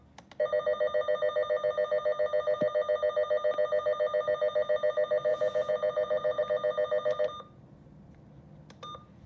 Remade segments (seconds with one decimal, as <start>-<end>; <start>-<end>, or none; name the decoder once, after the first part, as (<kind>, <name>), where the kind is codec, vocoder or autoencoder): 5.3-6.4 (vocoder, Vocos)